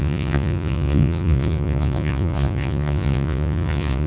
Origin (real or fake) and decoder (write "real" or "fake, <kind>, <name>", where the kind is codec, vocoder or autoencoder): fake, vocoder, Vocos